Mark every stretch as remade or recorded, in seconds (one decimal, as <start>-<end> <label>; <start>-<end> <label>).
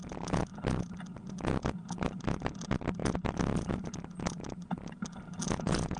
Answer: 0.0-6.0 recorded